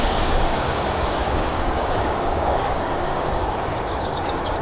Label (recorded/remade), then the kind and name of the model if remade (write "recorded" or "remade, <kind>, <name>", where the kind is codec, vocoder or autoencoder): remade, codec, DAC